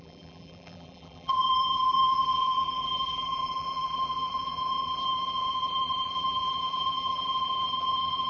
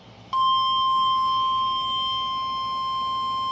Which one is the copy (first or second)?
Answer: first